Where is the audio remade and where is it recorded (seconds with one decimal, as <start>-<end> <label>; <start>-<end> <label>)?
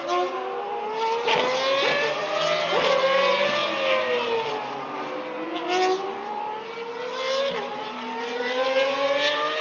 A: 0.0-9.6 recorded